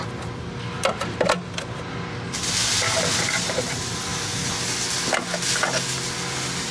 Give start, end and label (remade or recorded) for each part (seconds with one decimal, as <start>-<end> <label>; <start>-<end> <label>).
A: 0.0-6.7 recorded